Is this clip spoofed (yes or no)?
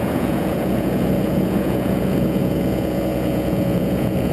yes